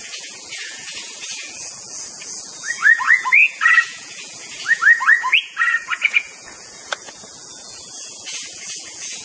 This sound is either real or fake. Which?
fake